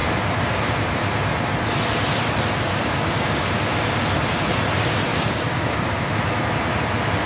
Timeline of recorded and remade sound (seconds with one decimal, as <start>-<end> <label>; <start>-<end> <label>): 0.0-2.7 recorded; 2.7-4.0 remade; 4.0-5.1 recorded; 5.1-5.9 remade; 5.9-7.3 recorded